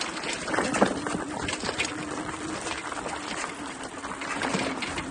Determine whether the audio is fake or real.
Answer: real